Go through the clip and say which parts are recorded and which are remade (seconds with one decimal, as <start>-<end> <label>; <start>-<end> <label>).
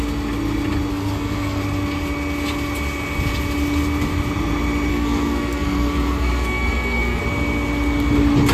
0.0-0.9 recorded; 0.9-1.6 remade; 1.6-4.9 recorded; 4.9-7.2 remade; 7.2-8.5 recorded